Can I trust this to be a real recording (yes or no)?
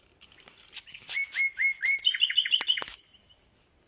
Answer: yes